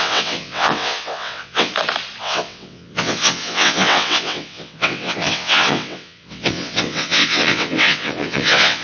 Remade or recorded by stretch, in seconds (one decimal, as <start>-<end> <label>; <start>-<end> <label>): 0.0-1.7 remade; 1.7-2.2 recorded; 2.2-8.8 remade

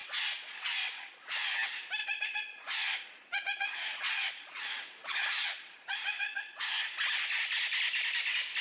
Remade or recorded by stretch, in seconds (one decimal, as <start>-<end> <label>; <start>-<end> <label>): 0.0-1.3 remade; 1.3-2.0 recorded; 2.0-6.7 remade; 6.7-8.6 recorded

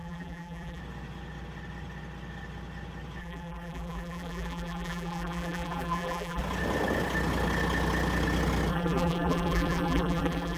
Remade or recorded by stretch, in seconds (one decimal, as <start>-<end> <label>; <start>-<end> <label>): 0.0-0.8 remade; 0.8-3.2 recorded; 3.2-6.4 remade; 6.4-8.7 recorded; 8.7-10.6 remade

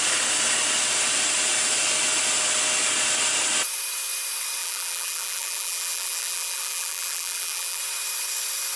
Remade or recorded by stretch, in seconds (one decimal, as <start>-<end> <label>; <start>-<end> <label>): 0.0-4.6 recorded; 4.6-7.8 remade; 7.8-8.8 recorded